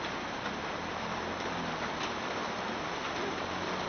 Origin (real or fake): fake